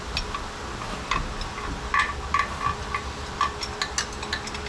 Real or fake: real